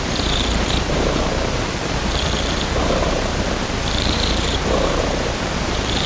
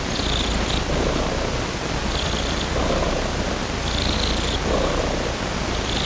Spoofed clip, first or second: first